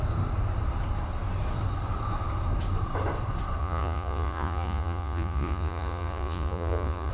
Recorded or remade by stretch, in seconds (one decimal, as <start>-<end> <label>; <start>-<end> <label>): 0.0-3.6 recorded; 3.6-7.1 remade